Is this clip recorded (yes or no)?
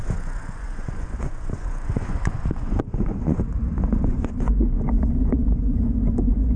no